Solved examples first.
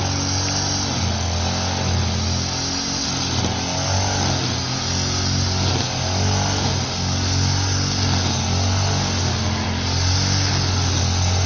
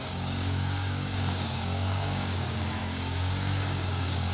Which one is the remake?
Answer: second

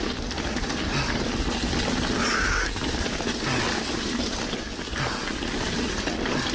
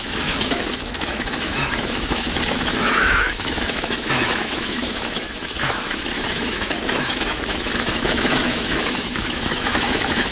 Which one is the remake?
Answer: second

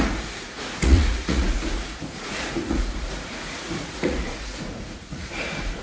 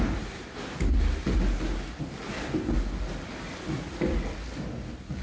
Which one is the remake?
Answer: first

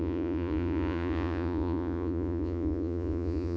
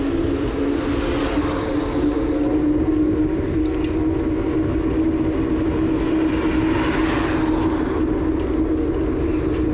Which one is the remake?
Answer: first